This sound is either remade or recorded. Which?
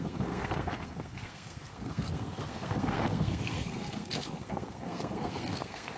remade